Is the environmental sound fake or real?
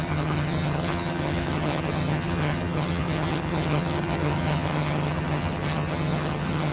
fake